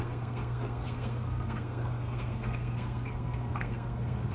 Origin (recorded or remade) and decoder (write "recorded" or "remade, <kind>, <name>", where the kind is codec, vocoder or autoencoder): remade, codec, SNAC